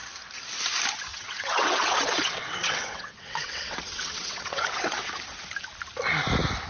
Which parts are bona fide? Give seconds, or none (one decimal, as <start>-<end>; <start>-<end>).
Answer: 0.0-1.1; 5.1-6.7